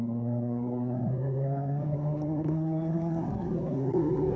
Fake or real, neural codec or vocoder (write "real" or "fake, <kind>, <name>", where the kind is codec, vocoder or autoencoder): fake, codec, SNAC